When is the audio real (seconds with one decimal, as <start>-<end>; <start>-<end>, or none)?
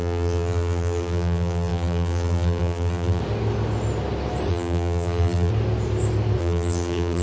3.2-4.5; 5.5-6.4